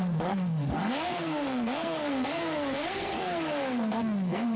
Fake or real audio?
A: fake